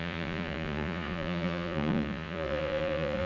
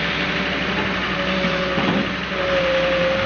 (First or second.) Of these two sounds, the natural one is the second